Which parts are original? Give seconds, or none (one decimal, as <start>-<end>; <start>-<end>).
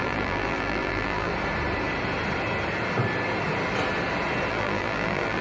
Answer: 1.3-4.5